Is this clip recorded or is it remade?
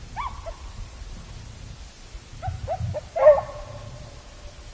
recorded